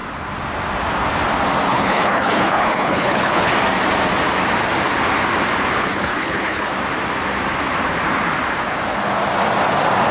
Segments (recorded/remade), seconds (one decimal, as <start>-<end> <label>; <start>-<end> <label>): 0.0-1.7 recorded; 1.7-3.5 remade; 3.5-5.8 recorded; 5.8-6.7 remade; 6.7-10.1 recorded